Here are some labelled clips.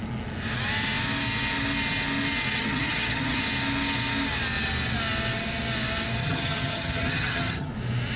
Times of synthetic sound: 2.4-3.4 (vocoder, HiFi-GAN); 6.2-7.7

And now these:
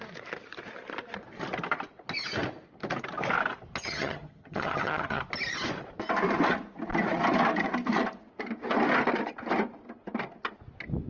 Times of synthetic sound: 3.8-5.2 (vocoder, HiFi-GAN)

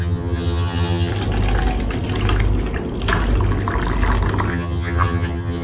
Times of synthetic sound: 0.0-1.1 (vocoder, HiFi-GAN); 4.5-5.6